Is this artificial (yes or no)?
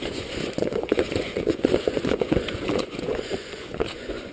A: yes